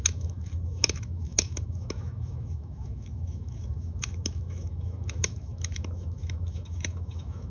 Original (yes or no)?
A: no